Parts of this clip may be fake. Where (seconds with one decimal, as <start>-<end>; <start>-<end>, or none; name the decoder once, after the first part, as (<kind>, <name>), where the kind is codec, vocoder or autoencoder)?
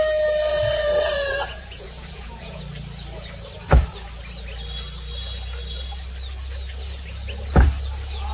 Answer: 0.5-2.6 (vocoder, Vocos)